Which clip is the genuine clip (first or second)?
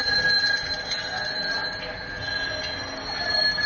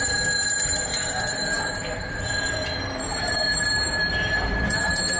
first